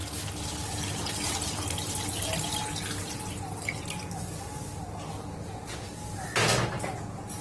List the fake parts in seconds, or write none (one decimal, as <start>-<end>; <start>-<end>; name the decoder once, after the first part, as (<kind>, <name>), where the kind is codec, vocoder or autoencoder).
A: none